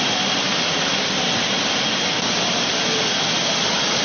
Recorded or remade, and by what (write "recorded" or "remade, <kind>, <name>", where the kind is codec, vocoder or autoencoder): recorded